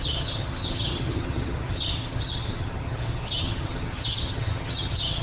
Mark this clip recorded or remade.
remade